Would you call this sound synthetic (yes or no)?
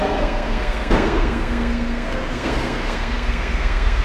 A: yes